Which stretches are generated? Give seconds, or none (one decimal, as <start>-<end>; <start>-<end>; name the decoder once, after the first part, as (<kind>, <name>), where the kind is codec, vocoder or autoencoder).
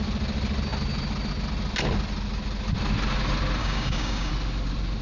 3.6-4.3 (codec, DAC)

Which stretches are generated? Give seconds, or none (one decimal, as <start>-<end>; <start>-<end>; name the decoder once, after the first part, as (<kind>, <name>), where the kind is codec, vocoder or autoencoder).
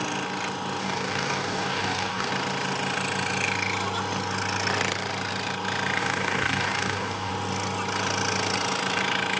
0.8-2.3 (codec, DAC); 6.0-7.3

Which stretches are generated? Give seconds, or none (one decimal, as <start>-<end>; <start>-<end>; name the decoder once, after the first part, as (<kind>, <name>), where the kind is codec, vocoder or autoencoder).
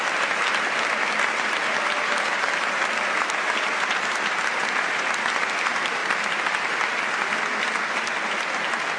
none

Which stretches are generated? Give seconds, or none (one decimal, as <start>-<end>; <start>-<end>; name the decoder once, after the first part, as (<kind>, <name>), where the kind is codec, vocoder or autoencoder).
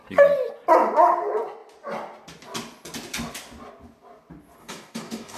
4.6-5.4 (codec, DAC)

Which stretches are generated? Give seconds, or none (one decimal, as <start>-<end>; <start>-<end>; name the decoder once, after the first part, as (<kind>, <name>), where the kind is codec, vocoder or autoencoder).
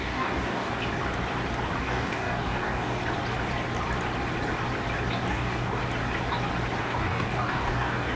0.0-0.8 (codec, DAC); 1.8-3.0; 5.3-5.8; 6.8-8.2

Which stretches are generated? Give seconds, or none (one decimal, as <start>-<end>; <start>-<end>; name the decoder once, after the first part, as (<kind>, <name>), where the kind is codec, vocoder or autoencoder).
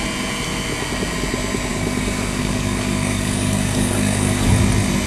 1.7-4.5 (codec, DAC)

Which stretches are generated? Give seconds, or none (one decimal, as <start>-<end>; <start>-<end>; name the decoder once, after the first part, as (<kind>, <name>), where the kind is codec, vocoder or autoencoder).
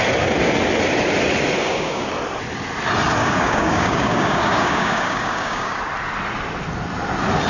1.6-2.1 (codec, DAC); 3.2-5.8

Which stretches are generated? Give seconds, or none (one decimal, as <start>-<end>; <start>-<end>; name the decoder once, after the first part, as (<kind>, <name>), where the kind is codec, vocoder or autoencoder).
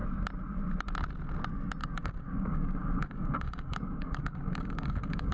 1.8-5.3 (codec, DAC)